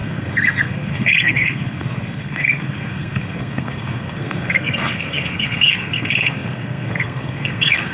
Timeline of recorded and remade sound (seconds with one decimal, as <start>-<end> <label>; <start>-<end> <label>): 0.0-7.9 remade